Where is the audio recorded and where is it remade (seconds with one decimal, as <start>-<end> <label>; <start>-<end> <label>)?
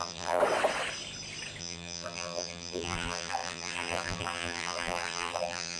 0.0-0.4 remade; 0.4-1.6 recorded; 1.6-5.8 remade